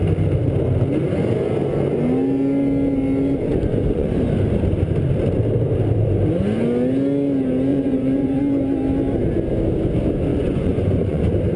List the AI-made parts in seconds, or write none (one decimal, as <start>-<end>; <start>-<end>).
3.5-4.2; 7.7-8.4; 10.3-11.2